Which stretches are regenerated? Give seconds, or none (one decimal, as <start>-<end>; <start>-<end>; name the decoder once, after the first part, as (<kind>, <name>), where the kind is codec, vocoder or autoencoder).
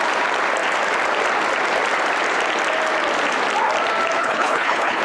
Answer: 4.2-5.0 (codec, HILCodec)